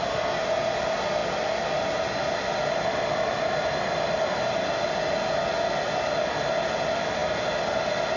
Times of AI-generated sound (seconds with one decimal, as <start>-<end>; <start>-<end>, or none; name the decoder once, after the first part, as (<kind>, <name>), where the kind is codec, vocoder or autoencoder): none